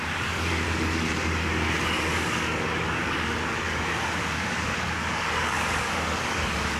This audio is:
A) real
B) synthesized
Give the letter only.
B